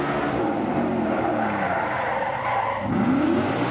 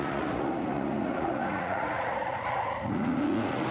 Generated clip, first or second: second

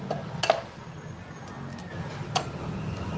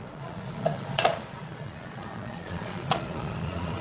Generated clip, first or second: second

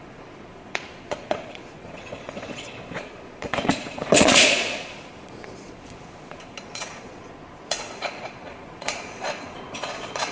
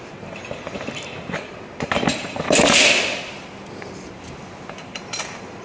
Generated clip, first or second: first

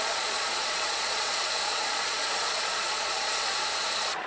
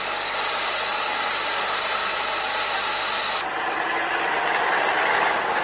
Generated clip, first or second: first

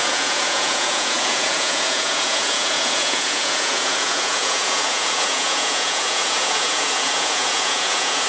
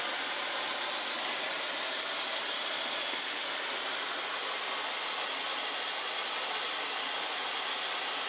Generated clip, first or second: first